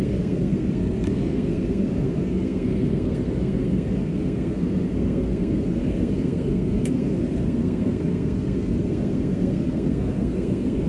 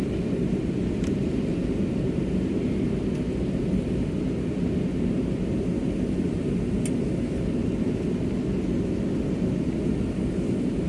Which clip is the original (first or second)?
second